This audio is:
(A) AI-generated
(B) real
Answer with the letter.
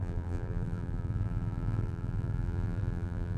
A